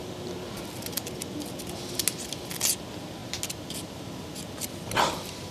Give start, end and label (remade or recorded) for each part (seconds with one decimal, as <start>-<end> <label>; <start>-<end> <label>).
0.0-5.5 recorded